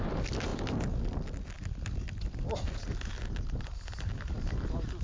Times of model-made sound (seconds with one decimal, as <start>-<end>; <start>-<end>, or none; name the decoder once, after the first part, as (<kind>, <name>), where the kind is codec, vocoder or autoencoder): none